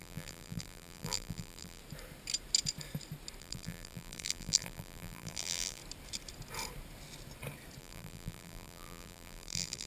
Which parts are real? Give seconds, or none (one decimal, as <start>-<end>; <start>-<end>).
1.8-3.4; 5.8-7.8